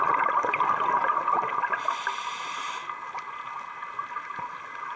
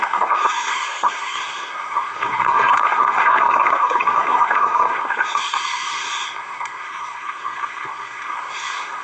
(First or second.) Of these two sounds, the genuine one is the first